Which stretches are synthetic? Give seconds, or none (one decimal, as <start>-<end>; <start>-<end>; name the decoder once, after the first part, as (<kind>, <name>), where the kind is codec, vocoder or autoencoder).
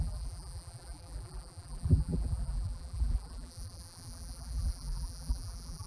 0.0-5.9 (vocoder, BigVGAN v2)